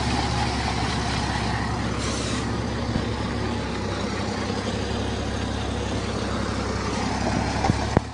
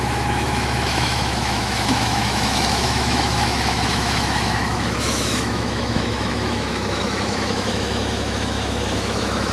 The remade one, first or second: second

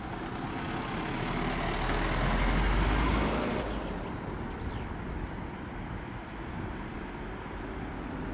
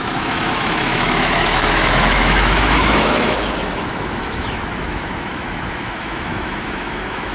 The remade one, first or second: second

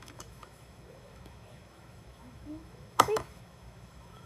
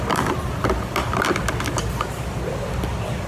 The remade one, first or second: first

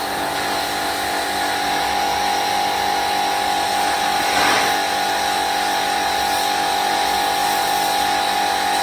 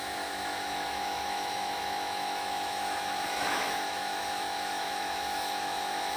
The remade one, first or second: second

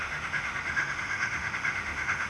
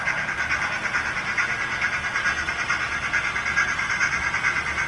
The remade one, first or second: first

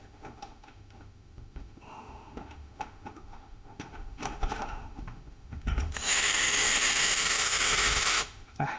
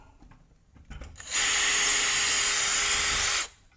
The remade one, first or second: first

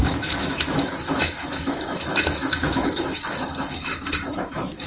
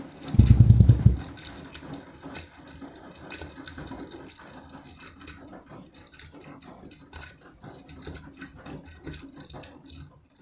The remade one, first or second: first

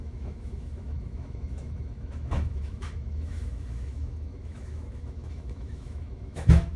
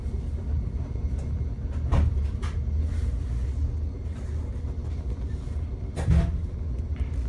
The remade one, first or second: first